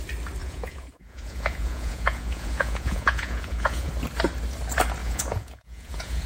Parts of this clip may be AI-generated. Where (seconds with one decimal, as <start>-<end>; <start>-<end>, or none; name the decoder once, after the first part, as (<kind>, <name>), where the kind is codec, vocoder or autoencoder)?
0.4-3.9 (vocoder, Vocos); 5.0-6.3